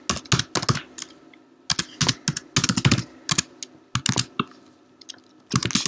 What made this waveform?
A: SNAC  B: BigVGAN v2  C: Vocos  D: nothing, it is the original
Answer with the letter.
D